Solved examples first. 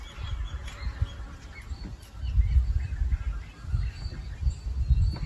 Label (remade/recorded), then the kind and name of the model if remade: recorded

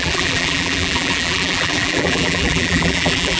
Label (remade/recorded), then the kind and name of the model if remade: remade, vocoder, BigVGAN v2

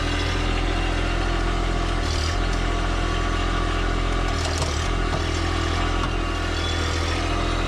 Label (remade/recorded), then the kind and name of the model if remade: recorded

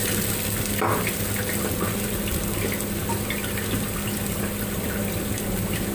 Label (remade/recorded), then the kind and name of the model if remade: recorded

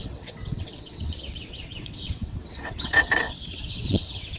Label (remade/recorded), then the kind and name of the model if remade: remade, vocoder, WaveNeXt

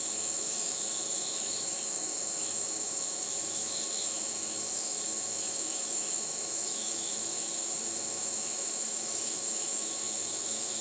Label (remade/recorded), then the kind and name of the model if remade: remade, autoencoder, DAC-VAE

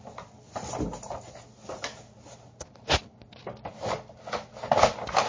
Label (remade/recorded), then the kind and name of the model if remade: recorded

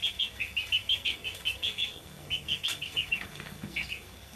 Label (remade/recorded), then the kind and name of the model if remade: remade, codec, SNAC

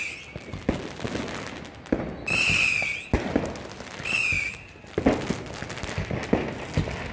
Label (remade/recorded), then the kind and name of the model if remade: recorded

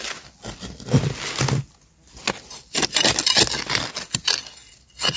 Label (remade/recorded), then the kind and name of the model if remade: recorded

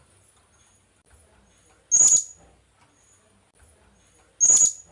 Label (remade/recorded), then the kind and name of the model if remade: recorded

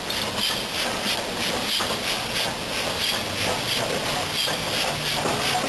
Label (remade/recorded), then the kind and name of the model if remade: recorded